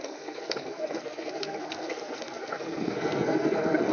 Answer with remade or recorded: remade